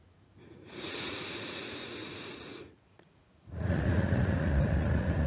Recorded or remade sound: remade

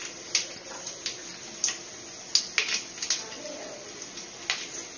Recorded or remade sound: recorded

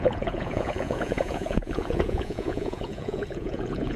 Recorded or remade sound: remade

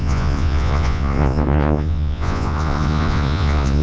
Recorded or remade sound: remade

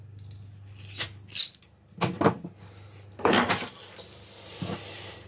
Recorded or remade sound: recorded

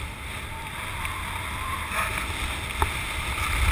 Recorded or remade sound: recorded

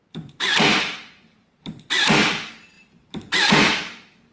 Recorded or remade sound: remade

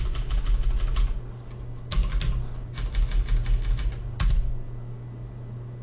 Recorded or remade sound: recorded